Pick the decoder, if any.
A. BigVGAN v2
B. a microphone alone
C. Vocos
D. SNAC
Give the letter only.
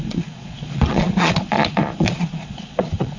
C